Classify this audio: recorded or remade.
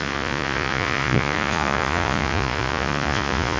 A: remade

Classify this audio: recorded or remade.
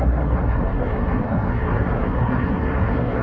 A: remade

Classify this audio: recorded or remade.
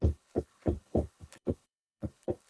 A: remade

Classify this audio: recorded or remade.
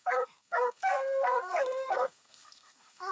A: remade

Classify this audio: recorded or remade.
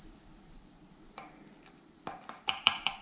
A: remade